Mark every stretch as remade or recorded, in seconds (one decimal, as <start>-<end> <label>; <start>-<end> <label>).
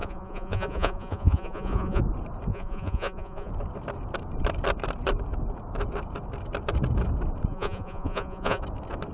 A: 0.0-2.0 remade; 2.0-2.5 recorded; 2.5-3.5 remade; 3.5-7.5 recorded; 7.5-8.6 remade; 8.6-9.1 recorded